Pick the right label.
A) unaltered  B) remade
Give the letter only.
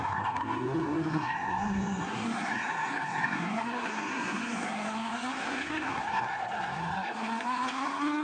B